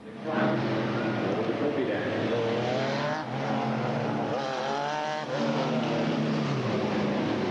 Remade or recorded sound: recorded